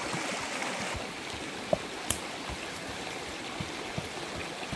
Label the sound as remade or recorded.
recorded